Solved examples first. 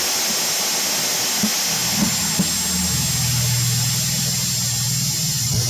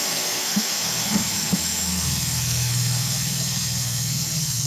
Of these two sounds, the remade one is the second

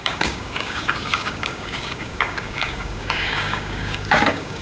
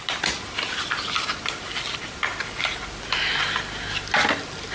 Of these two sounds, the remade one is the first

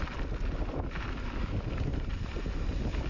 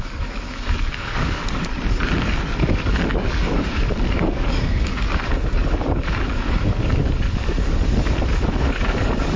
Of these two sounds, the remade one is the second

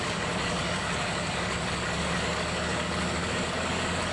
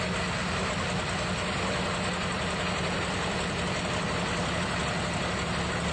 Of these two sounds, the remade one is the first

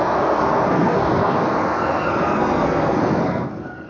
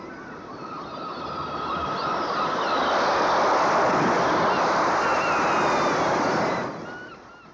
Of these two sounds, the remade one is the first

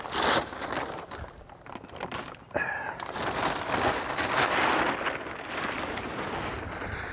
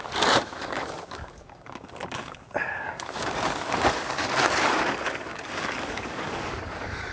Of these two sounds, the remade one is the second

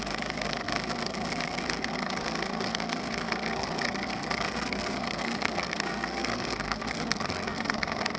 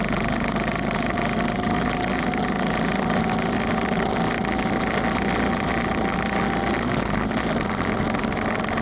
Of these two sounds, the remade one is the first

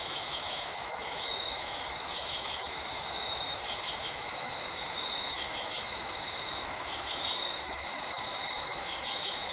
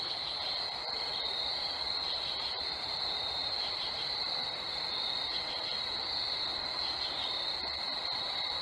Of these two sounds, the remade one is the first